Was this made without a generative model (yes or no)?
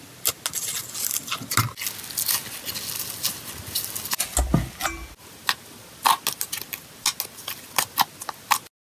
yes